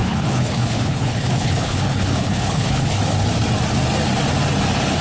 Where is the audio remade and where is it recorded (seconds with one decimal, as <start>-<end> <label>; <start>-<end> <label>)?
0.0-3.0 remade; 3.0-5.0 recorded